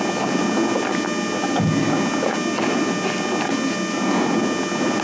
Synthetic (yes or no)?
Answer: no